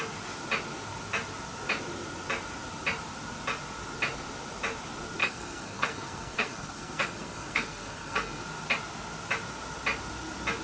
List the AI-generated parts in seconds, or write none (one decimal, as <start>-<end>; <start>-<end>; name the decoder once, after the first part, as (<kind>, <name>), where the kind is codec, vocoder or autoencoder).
5.2-8.4 (codec, SNAC)